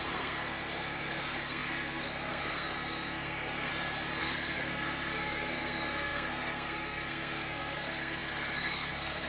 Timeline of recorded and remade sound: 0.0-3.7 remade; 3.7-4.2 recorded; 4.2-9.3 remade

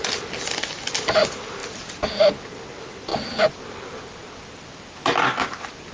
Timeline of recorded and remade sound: 0.0-5.9 recorded

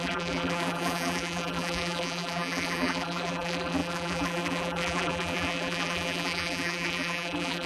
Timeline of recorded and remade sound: 0.0-7.7 remade

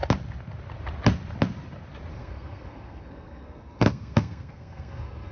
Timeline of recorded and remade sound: 0.0-2.1 recorded; 2.1-5.3 remade

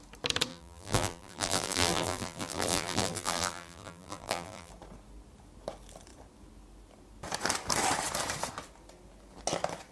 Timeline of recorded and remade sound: 0.0-0.5 recorded; 0.5-4.7 remade; 4.7-9.9 recorded

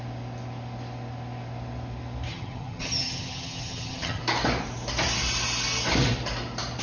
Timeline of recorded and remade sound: 0.0-2.3 recorded; 2.3-4.2 remade; 4.2-6.8 recorded

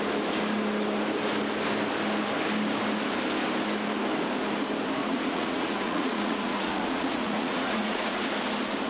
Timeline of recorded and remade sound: 0.0-5.0 recorded; 5.0-8.3 remade; 8.3-8.9 recorded

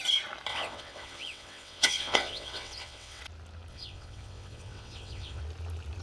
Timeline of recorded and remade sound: 0.0-0.5 recorded; 0.5-3.2 remade; 3.2-3.7 recorded; 3.7-5.4 remade; 5.4-6.0 recorded